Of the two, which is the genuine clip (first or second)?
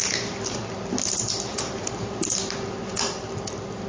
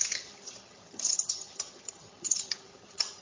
first